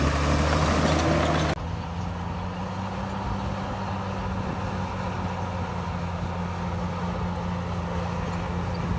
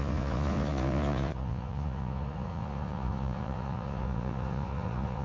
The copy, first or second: second